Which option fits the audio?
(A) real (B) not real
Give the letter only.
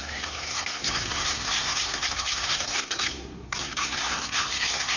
B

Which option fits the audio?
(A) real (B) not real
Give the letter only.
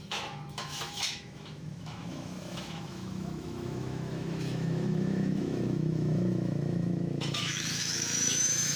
B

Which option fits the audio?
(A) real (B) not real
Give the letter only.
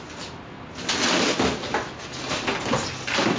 A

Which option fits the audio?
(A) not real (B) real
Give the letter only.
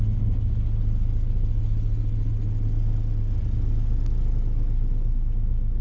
B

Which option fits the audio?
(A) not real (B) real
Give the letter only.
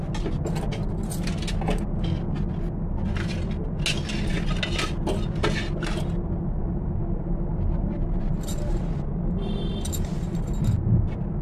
B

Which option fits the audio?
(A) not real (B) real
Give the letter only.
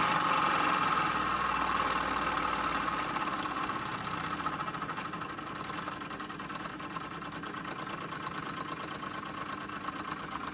B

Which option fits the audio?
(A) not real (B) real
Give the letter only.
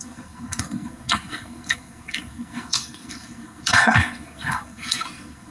A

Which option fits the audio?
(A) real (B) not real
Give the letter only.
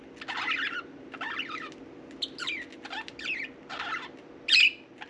A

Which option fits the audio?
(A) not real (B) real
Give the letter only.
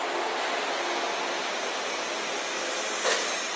B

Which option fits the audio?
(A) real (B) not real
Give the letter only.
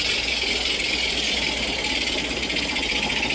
A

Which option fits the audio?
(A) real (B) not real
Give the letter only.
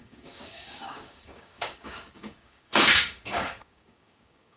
B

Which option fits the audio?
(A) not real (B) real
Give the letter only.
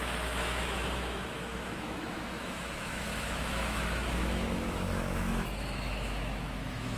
A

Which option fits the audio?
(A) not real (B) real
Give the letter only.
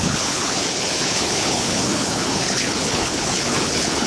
A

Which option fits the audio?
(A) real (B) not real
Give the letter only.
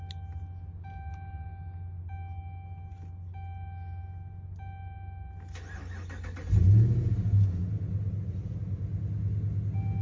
A